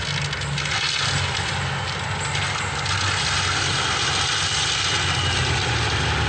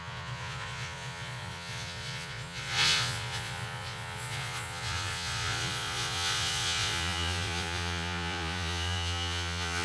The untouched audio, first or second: first